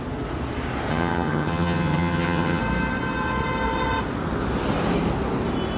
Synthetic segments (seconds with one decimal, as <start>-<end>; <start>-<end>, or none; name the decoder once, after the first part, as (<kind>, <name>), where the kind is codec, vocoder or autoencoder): 0.9-2.6 (vocoder, HiFi-GAN)